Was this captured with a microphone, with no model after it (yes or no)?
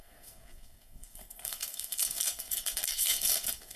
no